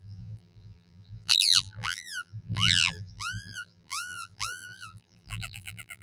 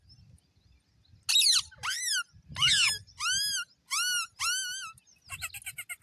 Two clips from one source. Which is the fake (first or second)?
first